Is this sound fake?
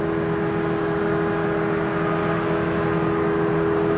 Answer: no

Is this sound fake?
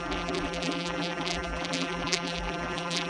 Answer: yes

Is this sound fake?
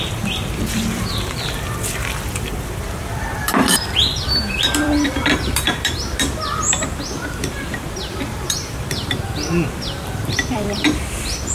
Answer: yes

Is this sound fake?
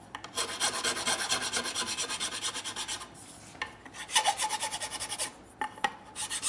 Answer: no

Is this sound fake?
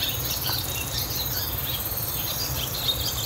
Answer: no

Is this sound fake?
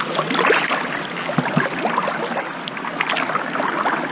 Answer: no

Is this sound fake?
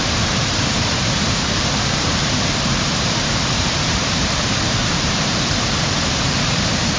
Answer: yes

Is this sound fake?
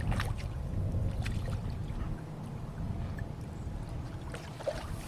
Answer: no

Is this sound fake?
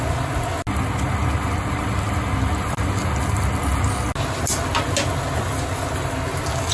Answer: no